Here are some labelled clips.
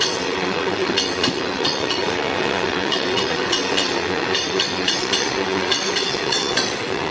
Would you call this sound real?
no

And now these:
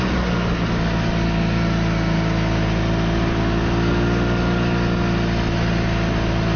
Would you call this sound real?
yes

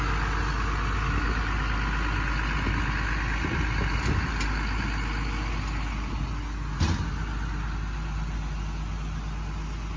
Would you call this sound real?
yes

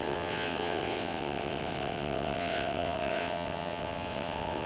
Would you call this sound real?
no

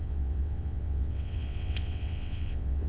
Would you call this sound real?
no